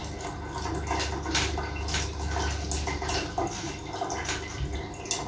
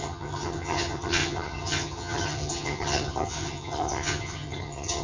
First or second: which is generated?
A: second